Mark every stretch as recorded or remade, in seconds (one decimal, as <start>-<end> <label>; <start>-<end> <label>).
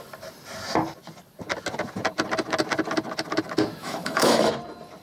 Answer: 0.0-3.8 recorded; 3.8-4.5 remade; 4.5-5.0 recorded